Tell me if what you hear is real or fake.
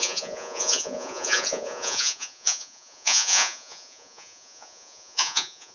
fake